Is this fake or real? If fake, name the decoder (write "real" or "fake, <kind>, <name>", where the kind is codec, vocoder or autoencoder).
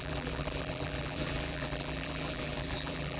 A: fake, vocoder, BigVGAN v2